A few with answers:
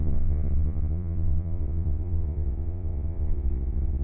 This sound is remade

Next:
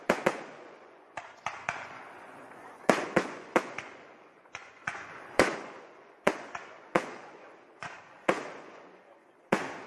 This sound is remade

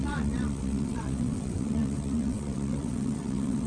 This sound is remade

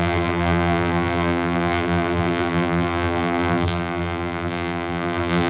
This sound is remade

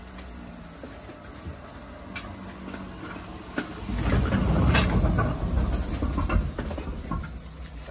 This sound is recorded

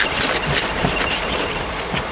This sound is remade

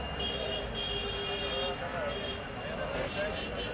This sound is recorded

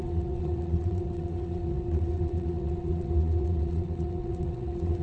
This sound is remade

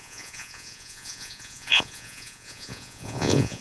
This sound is remade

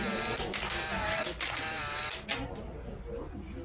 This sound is recorded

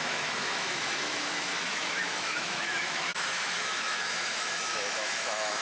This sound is remade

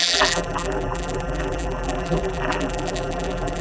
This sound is remade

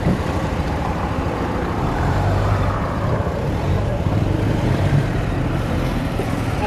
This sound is remade